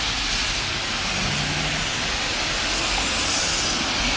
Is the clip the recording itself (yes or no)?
yes